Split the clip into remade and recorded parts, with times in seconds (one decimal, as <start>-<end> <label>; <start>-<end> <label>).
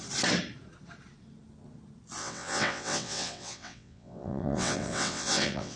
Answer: 0.0-2.2 recorded; 2.2-5.8 remade